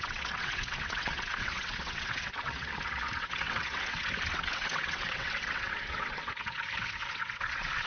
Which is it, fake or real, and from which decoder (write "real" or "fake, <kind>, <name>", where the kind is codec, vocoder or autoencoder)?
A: fake, vocoder, WaveNeXt